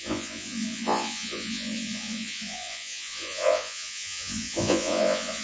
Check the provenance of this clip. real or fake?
fake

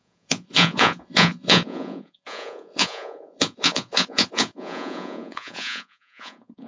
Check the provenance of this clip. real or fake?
fake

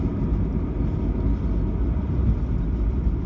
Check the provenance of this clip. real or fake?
real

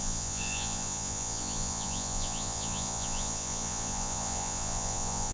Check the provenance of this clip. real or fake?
fake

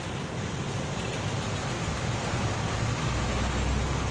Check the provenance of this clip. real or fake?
real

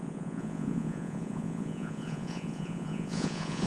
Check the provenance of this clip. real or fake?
fake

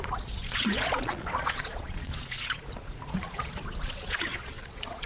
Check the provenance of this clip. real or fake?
fake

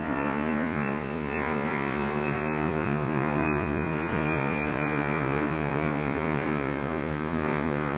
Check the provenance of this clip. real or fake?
fake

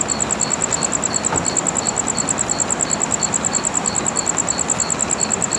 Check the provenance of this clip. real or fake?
real